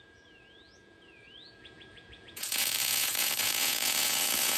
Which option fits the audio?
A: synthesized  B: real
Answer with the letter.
A